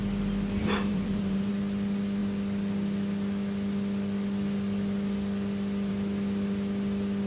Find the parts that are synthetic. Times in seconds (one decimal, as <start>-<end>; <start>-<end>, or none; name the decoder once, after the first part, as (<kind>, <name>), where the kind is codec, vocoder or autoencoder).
0.6-1.5 (vocoder, BigVGAN v2)